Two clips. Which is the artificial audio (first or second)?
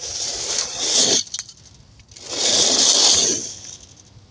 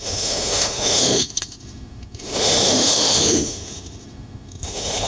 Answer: second